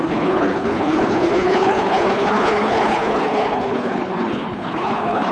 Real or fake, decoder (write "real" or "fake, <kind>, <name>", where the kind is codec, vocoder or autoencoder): fake, codec, HILCodec